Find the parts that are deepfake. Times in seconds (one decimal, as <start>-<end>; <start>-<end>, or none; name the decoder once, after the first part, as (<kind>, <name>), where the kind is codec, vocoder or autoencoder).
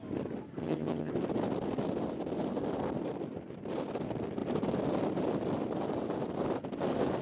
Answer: 0.6-1.1 (vocoder, HiFi-GAN)